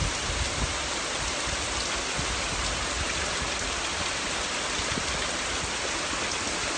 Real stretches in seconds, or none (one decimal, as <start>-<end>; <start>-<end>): 0.0-6.8